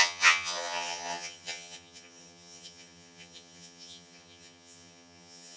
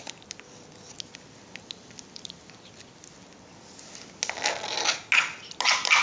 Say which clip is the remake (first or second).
first